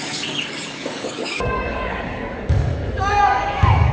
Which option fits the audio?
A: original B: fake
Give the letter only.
B